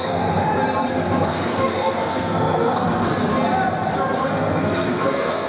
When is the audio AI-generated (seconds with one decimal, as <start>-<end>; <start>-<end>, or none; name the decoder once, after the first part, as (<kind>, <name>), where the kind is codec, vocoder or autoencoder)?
0.0-0.4 (codec, SNAC); 0.9-3.1; 4.2-5.5